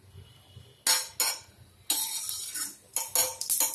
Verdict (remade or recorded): recorded